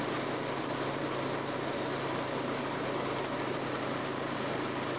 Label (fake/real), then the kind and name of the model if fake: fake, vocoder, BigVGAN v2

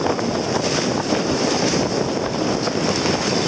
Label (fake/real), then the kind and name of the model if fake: real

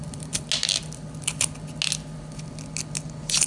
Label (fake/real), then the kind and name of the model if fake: real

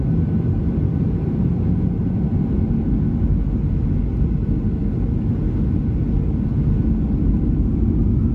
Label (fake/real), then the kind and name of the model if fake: real